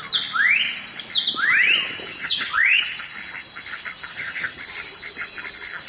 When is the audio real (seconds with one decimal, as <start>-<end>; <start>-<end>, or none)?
0.0-2.2; 2.8-4.1; 4.6-5.9

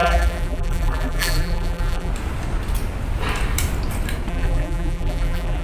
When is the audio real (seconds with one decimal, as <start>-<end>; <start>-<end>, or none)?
2.1-4.3

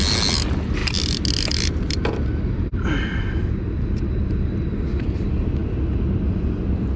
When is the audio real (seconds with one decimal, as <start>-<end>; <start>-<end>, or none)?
0.0-7.0

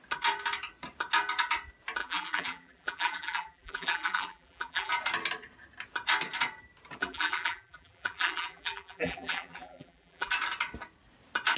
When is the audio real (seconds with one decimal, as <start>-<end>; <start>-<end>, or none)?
0.0-2.0; 4.9-7.0; 10.3-11.6

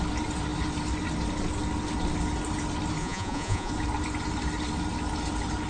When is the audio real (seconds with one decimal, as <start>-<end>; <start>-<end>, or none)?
0.0-3.0; 3.7-5.7

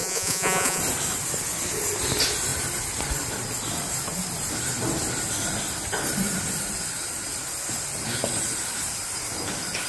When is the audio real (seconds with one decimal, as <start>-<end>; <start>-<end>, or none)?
0.8-9.9

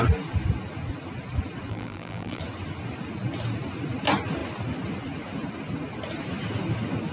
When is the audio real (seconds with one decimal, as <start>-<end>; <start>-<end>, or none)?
0.0-1.7; 2.4-7.1

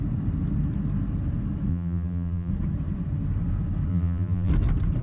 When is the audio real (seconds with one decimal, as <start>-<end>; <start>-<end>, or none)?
0.0-1.7; 2.5-3.9; 4.5-5.0